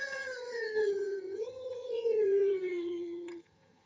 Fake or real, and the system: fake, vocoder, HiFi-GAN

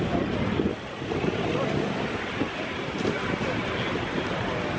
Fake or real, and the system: real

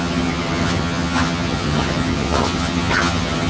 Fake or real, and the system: fake, vocoder, HiFi-GAN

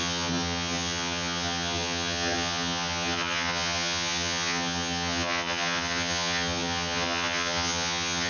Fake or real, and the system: fake, vocoder, HiFi-GAN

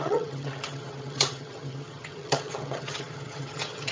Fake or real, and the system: fake, vocoder, HiFi-GAN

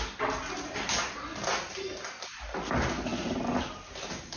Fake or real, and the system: real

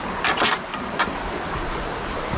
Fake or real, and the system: real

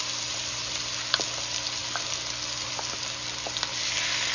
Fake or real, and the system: real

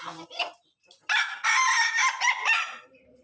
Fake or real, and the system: real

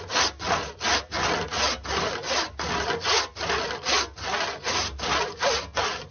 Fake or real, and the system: real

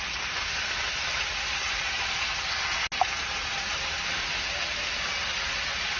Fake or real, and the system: real